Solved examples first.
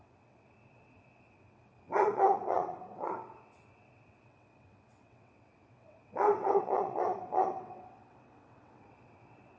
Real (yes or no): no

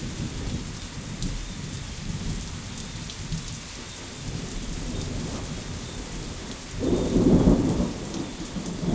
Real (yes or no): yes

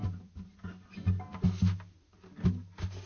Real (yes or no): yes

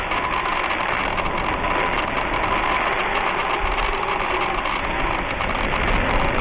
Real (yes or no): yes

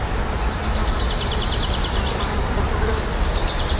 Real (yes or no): yes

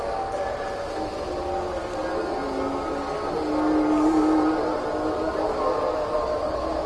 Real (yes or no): yes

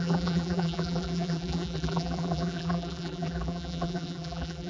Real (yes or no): no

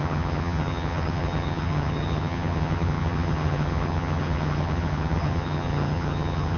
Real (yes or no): no